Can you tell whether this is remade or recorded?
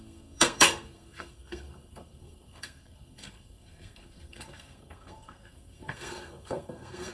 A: remade